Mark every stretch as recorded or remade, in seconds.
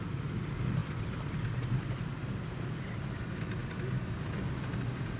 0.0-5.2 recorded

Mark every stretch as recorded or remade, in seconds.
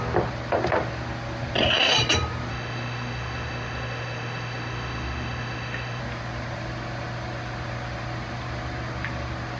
0.0-2.5 recorded; 2.5-6.0 remade; 6.0-9.6 recorded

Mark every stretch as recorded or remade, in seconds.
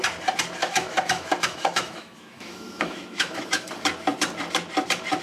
0.0-0.6 recorded; 0.6-3.7 remade; 3.7-5.2 recorded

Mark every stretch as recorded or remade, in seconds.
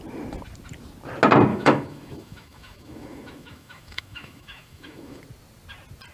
0.0-1.5 recorded; 1.5-5.2 remade; 5.2-6.1 recorded